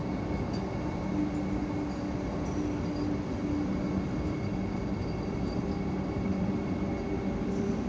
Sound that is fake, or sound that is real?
real